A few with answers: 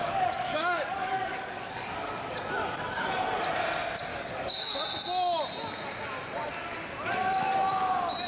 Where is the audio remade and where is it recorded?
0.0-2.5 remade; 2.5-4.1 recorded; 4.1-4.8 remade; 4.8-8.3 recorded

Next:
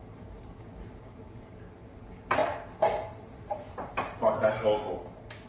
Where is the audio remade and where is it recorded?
0.0-5.5 recorded

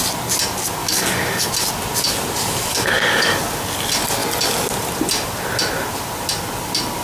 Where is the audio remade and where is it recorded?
0.0-0.8 recorded; 0.8-1.5 remade; 1.5-2.7 recorded; 2.7-3.4 remade; 3.4-7.0 recorded

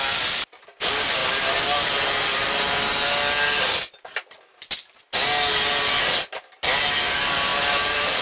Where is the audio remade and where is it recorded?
0.0-8.2 recorded

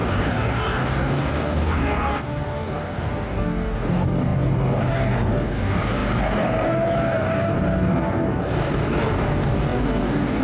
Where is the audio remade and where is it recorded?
0.0-10.4 remade